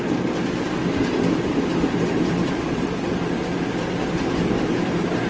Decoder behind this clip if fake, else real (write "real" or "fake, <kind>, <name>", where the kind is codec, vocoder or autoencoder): real